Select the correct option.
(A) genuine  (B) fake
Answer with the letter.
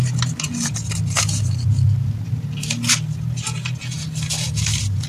A